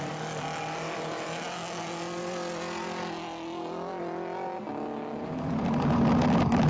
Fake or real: real